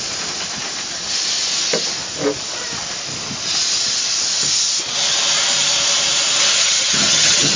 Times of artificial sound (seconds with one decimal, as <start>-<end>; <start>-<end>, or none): 6.6-7.6